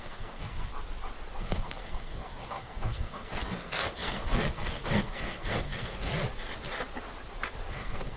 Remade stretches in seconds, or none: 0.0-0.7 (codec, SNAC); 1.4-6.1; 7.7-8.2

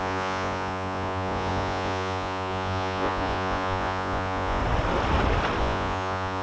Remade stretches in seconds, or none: 0.0-4.6 (vocoder, Vocos); 5.6-6.4